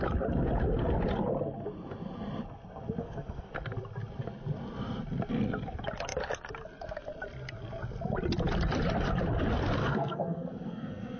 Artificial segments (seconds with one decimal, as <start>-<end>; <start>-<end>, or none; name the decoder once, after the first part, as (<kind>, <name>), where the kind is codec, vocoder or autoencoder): 3.0-3.5 (codec, SNAC); 9.8-11.2